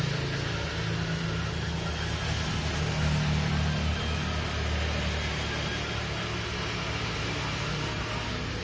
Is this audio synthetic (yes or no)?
no